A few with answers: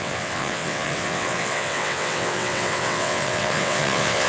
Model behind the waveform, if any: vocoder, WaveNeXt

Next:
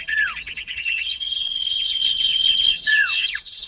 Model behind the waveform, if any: vocoder, WaveNeXt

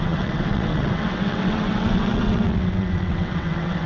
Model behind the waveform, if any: vocoder, WaveNeXt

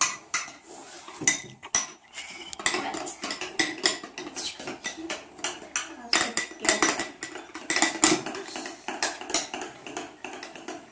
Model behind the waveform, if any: none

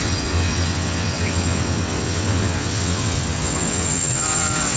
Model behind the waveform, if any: vocoder, WaveNeXt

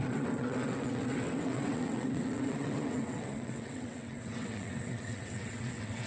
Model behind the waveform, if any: vocoder, WaveNeXt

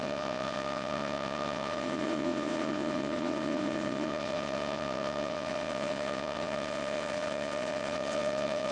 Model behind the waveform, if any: vocoder, WaveNeXt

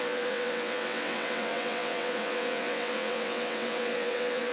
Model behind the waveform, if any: vocoder, WaveNeXt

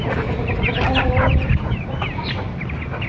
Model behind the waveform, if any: none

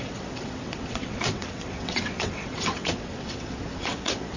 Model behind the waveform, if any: vocoder, WaveNeXt